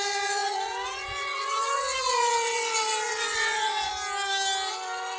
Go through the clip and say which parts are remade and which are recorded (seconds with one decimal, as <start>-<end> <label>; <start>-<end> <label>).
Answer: 0.0-3.9 remade; 3.9-4.7 recorded; 4.7-5.2 remade